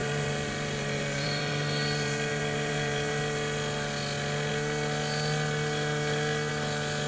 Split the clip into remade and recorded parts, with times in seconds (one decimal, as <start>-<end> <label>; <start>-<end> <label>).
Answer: 0.0-3.2 remade; 3.2-7.1 recorded